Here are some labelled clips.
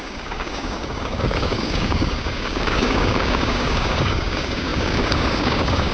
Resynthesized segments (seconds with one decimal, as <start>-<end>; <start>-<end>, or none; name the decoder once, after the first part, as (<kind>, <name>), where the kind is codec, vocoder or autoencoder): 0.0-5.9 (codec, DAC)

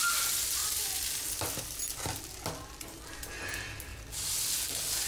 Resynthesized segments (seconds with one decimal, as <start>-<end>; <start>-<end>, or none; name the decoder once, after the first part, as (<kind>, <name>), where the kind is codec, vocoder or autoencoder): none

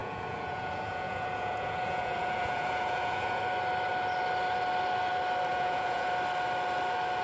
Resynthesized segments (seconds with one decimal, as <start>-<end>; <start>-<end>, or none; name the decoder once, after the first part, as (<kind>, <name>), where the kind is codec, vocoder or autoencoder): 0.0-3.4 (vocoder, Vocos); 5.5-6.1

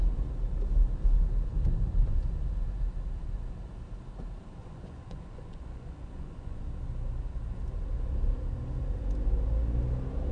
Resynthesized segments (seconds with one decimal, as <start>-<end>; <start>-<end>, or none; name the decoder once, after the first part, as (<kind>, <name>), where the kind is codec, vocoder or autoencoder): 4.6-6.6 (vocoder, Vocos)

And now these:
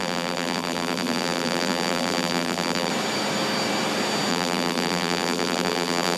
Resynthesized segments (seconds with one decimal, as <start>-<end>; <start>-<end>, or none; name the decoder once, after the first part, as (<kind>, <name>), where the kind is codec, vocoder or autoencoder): 0.0-2.9 (vocoder, BigVGAN v2); 4.3-6.2

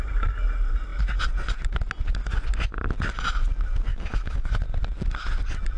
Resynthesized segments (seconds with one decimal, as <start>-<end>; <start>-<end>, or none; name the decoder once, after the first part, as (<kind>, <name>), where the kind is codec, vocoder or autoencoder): 3.9-4.6 (autoencoder, DAC-VAE)

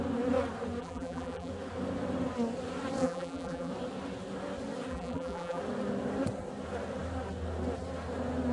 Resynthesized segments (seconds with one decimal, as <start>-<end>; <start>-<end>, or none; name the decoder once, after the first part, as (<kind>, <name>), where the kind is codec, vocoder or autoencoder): 0.8-1.5 (vocoder, BigVGAN v2); 3.0-3.7; 4.9-5.6

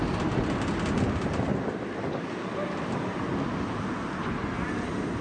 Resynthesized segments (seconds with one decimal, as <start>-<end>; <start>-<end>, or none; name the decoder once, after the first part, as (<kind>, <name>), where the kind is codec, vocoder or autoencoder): none